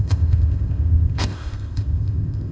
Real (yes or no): no